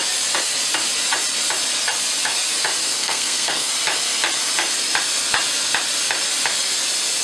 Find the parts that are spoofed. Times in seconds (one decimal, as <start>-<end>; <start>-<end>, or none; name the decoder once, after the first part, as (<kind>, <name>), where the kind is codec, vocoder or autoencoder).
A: 2.8-3.7 (codec, SNAC)

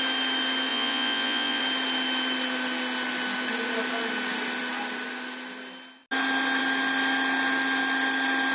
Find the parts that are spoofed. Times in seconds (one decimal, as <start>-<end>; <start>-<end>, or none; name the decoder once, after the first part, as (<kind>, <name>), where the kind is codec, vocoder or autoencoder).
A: 0.7-1.6 (vocoder, Vocos)

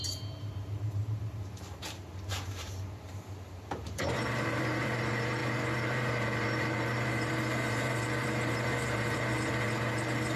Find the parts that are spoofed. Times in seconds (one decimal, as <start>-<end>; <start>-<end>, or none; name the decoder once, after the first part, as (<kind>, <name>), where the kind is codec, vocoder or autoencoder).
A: 0.0-10.4 (vocoder, BigVGAN v2)

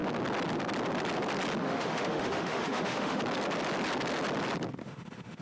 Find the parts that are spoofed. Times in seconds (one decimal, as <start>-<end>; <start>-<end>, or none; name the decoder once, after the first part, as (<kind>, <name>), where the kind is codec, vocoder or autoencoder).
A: 1.6-3.2 (autoencoder, DAC-VAE); 4.8-5.4

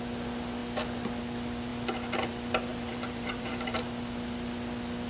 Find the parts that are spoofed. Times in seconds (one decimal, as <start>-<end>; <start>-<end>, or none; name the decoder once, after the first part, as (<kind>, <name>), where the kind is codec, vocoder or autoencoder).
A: 2.7-3.8 (vocoder, BigVGAN v2)

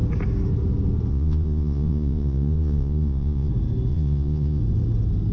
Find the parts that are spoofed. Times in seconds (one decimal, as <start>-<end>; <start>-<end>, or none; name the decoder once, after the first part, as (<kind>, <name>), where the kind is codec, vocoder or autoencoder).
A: 1.1-3.5 (vocoder, Vocos); 3.9-4.6